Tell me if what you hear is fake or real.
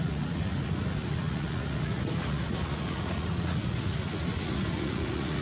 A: fake